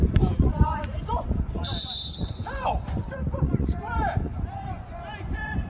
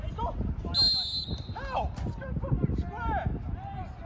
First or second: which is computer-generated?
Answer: first